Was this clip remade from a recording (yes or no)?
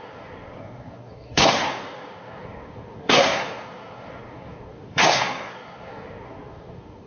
yes